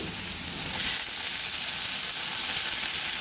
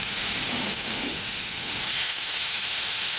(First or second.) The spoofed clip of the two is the second